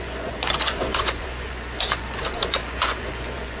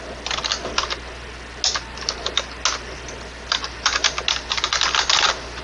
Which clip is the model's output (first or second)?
first